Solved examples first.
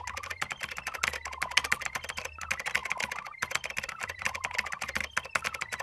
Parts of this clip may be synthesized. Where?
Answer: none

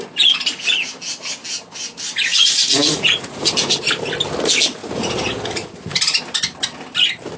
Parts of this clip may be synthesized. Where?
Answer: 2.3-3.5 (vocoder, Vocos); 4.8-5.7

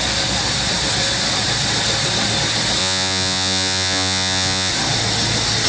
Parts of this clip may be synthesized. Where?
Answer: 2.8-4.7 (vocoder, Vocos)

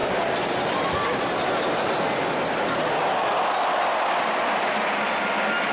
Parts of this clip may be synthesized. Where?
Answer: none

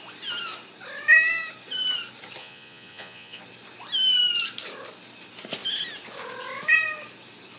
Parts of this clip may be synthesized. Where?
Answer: 2.4-3.4 (vocoder, Vocos)